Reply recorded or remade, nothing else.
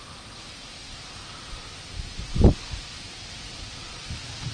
recorded